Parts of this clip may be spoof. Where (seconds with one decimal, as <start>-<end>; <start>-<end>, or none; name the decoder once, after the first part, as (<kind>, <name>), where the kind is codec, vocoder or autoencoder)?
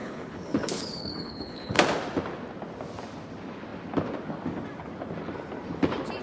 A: 0.0-1.8 (codec, HILCodec)